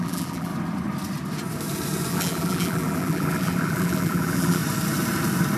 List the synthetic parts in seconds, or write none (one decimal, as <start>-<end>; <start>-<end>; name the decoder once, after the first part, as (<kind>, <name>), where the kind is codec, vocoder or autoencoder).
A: 0.0-0.5 (vocoder, BigVGAN v2); 2.1-4.6